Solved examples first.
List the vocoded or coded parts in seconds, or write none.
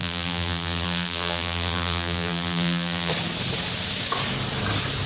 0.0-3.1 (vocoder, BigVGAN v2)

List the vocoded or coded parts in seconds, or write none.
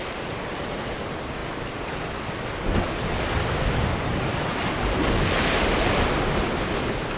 none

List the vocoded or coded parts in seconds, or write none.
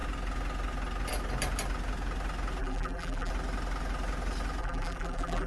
2.6-3.3 (vocoder, BigVGAN v2); 4.6-5.5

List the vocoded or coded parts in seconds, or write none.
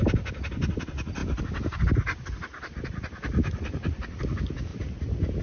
none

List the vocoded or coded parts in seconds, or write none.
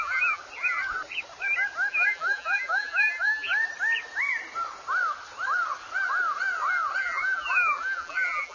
0.0-0.4 (vocoder, BigVGAN v2); 1.9-3.5; 7.0-8.5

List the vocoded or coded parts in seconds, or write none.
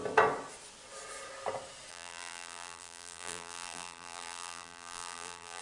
1.9-5.6 (vocoder, BigVGAN v2)